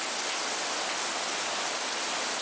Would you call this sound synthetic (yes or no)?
no